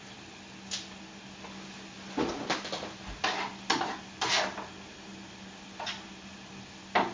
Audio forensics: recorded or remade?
recorded